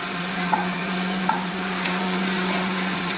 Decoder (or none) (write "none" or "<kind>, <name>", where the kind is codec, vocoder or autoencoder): vocoder, Vocos